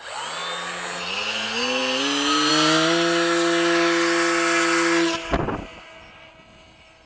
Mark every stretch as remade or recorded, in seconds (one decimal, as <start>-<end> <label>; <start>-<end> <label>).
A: 0.0-7.1 recorded